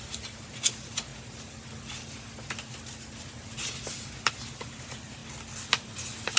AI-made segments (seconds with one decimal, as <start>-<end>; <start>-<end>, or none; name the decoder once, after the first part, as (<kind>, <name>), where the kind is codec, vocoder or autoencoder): 0.0-1.1 (vocoder, BigVGAN v2); 4.3-5.2